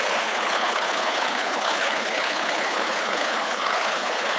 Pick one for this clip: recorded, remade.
remade